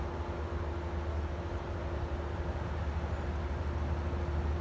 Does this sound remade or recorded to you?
recorded